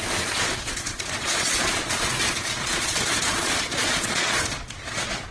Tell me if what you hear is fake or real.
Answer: fake